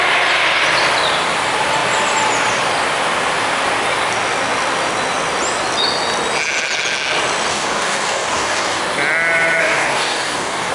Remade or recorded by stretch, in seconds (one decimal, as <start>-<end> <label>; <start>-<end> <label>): 0.0-7.5 recorded; 7.5-8.8 remade; 8.8-9.6 recorded; 9.6-10.7 remade